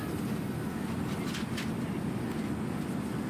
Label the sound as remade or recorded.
recorded